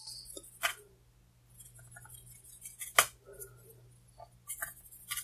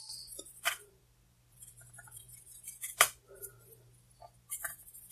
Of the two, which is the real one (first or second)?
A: first